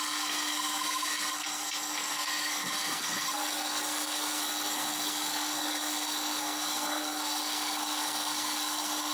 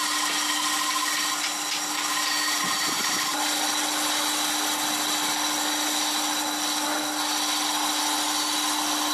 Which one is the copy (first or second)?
first